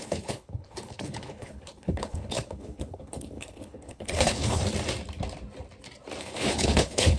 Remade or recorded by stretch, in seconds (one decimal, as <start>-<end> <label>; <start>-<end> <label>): 0.0-4.6 remade; 4.6-6.2 recorded; 6.2-7.2 remade